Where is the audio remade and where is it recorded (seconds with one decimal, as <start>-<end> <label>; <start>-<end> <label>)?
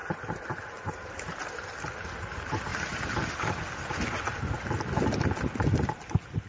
0.0-1.4 remade; 1.4-6.5 recorded